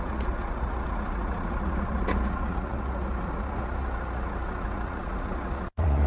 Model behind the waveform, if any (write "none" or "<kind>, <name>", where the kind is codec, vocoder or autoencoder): vocoder, Vocos